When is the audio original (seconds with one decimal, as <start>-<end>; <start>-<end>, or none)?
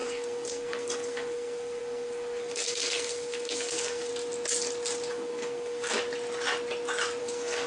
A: 4.1-5.1; 5.9-7.2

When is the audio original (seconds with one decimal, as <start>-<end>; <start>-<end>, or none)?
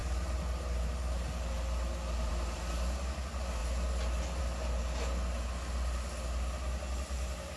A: 0.0-7.6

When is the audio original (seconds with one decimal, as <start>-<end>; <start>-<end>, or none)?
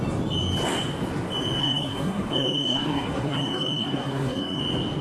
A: 0.0-1.6; 4.6-5.0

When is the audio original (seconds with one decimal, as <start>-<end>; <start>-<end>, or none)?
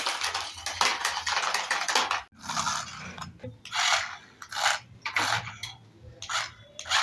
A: 0.0-7.0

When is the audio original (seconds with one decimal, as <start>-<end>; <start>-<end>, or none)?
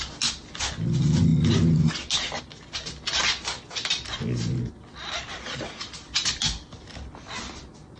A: 0.0-8.0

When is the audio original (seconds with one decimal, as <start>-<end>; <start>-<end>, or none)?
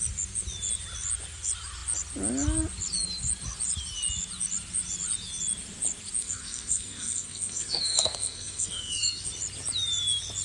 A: 0.0-6.2; 9.3-10.4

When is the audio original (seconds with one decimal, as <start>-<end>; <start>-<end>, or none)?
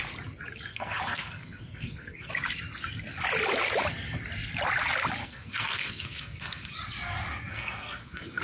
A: 0.0-0.7; 2.3-5.2; 6.7-7.5